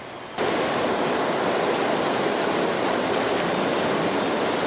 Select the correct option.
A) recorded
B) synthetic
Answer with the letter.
A